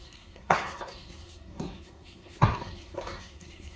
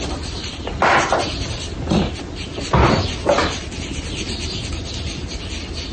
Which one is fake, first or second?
first